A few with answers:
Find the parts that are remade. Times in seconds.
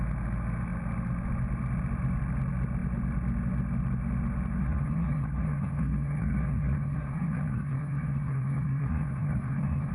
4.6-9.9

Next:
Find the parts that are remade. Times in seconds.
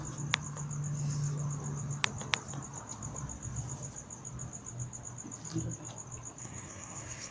6.4-7.3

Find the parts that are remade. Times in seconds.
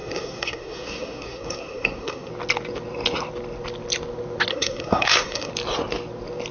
0.0-2.3; 4.5-5.5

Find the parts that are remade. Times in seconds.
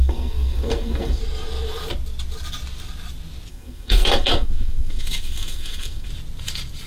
0.0-1.2; 3.5-6.1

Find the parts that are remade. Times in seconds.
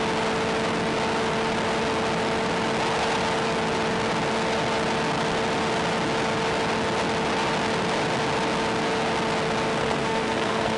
9.8-10.8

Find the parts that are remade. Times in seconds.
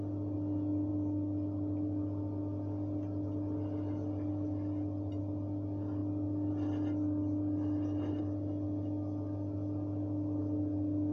none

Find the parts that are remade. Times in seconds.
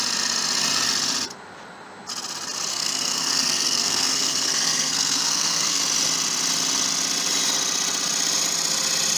2.7-5.8